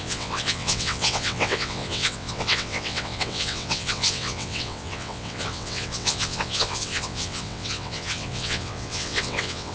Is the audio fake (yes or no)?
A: yes